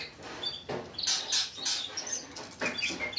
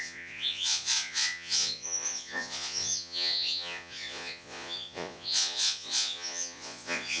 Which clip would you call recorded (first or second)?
first